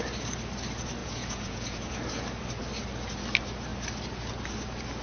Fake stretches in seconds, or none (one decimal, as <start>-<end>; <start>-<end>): 1.0-2.0